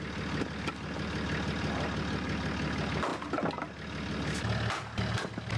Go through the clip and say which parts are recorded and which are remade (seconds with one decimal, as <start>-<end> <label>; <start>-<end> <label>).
0.0-5.6 recorded

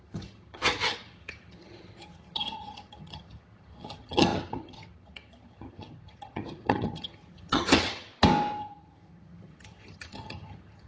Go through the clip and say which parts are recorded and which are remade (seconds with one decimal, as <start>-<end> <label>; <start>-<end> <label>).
0.0-8.1 remade; 8.1-8.6 recorded; 8.6-10.9 remade

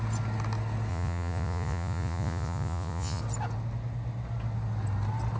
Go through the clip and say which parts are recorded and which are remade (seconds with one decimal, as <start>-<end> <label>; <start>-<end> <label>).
0.0-0.9 recorded; 0.9-3.2 remade; 3.2-5.4 recorded

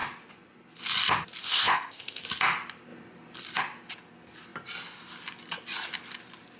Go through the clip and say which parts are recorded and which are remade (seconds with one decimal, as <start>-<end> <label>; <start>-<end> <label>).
0.0-1.4 recorded; 1.4-2.2 remade; 2.2-6.6 recorded